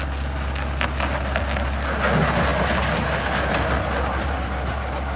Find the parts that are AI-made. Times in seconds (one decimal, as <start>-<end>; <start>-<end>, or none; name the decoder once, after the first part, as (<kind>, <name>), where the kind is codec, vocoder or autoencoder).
none